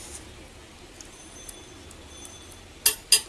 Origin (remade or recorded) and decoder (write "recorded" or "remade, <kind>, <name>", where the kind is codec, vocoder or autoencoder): recorded